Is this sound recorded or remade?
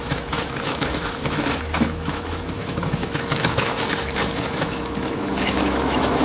remade